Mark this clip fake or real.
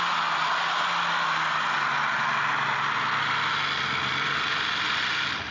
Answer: real